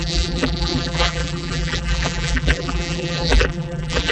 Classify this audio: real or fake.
fake